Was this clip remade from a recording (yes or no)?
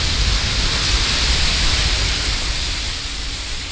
no